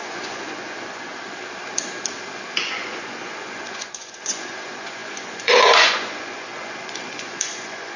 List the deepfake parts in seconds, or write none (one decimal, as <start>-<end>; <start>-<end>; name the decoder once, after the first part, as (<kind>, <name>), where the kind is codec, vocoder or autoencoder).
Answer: 0.0-1.1 (vocoder, Vocos); 2.6-8.0